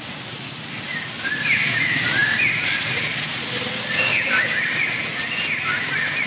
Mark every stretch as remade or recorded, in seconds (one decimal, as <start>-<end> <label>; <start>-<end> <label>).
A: 0.0-6.3 recorded